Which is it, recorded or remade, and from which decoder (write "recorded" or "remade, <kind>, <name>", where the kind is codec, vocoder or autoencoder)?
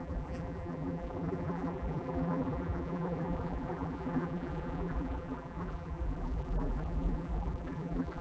remade, vocoder, BigVGAN v2